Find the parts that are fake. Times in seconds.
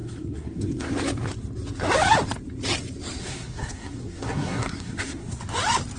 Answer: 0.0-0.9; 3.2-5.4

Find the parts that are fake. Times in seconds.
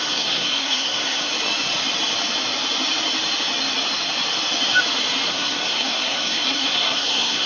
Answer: 0.0-1.3; 5.3-7.5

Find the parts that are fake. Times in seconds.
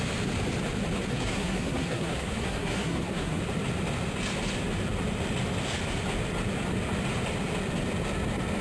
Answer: 1.1-3.4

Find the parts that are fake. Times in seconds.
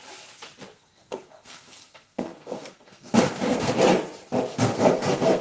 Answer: 0.7-3.7; 4.5-5.4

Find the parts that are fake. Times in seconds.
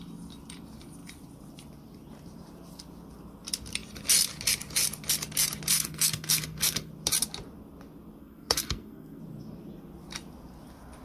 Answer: 5.7-6.9; 8.2-9.2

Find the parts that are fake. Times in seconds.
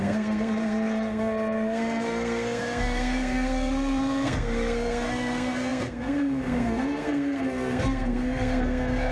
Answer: 0.0-9.1